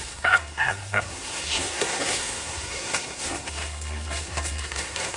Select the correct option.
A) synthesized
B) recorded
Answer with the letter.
A